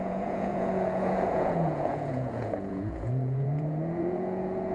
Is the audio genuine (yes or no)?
no